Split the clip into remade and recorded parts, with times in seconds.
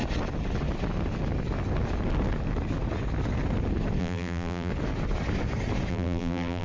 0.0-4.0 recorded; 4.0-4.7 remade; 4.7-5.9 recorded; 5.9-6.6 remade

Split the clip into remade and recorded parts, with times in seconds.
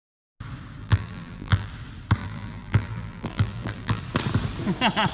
0.0-0.8 recorded; 0.8-1.7 remade; 1.7-2.2 recorded; 2.2-4.0 remade; 4.0-5.1 recorded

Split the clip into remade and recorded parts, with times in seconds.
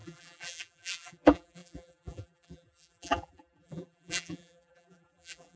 0.0-5.6 remade